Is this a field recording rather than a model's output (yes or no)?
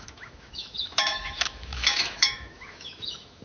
no